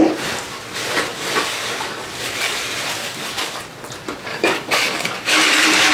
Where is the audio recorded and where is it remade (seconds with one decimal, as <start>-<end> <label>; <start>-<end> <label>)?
0.0-1.1 recorded; 1.1-2.5 remade; 2.5-3.0 recorded; 3.0-3.6 remade; 3.6-4.3 recorded; 4.3-5.9 remade